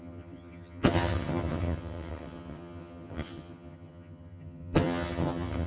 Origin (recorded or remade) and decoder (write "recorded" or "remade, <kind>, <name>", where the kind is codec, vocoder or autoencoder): remade, vocoder, HiFi-GAN